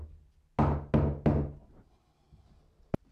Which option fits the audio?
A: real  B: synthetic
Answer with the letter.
A